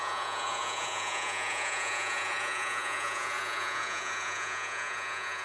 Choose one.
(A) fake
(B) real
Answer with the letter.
A